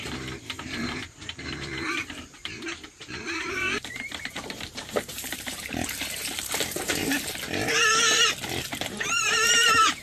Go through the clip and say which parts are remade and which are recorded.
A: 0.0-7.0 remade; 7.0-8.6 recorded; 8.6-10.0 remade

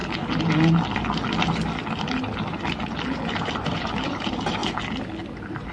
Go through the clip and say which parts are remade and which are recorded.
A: 0.0-3.1 recorded; 3.1-4.6 remade; 4.6-5.3 recorded; 5.3-5.7 remade